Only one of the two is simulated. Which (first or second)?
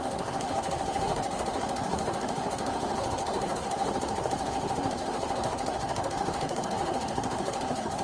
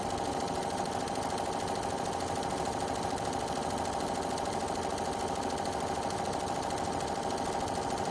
first